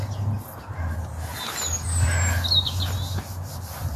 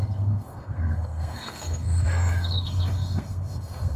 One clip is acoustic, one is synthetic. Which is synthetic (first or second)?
second